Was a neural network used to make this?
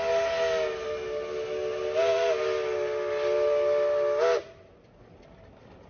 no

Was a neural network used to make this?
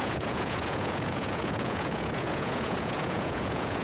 yes